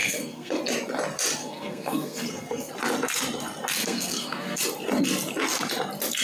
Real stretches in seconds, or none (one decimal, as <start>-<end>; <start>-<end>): 0.6-1.4; 2.7-3.8; 4.6-6.2